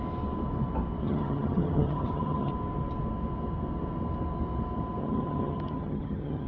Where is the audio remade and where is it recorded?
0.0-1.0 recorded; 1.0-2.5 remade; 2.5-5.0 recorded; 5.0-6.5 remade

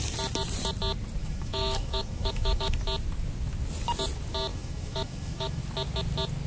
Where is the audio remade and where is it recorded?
0.0-1.2 recorded; 1.2-2.8 remade; 2.8-4.5 recorded; 4.5-5.6 remade; 5.6-6.5 recorded

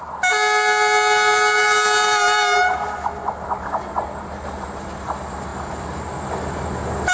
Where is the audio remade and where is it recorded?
0.0-7.1 recorded